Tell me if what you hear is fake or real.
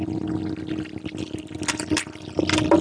fake